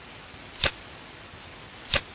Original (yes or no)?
yes